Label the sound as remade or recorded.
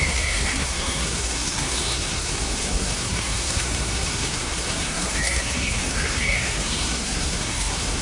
remade